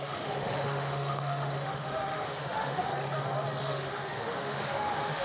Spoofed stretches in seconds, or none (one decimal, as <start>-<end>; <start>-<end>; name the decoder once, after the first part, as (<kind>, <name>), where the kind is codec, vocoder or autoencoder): 0.0-2.9 (autoencoder, DAC-VAE); 3.6-5.2